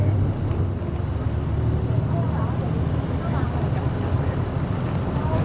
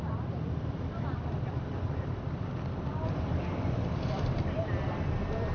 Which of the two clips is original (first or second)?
first